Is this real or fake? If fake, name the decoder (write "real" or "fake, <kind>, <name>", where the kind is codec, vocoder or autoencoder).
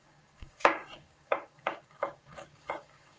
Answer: fake, codec, DAC